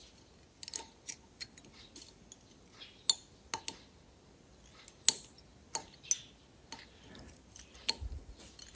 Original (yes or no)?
yes